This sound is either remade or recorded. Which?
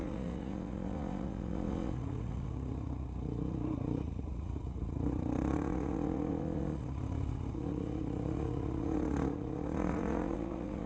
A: remade